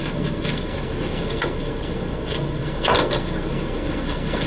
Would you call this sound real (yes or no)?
no